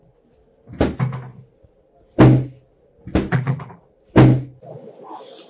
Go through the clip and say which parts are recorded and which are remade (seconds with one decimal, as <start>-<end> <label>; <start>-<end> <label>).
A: 0.0-3.3 recorded; 3.3-3.8 remade; 3.8-5.5 recorded